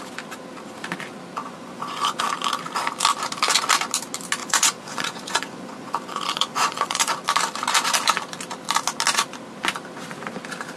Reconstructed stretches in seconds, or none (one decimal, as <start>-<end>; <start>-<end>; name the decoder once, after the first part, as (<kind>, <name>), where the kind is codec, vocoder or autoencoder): 1.4-2.2 (vocoder, Vocos); 4.4-7.1